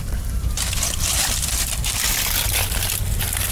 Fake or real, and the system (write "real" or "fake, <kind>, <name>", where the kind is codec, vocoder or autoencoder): fake, vocoder, BigVGAN v2